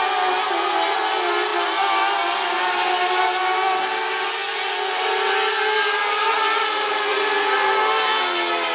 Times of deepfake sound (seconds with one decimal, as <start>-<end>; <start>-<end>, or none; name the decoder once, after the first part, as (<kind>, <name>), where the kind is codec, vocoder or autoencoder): none